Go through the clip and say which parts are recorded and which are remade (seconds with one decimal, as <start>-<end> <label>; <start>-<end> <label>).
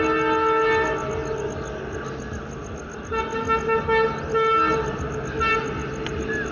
0.0-6.5 recorded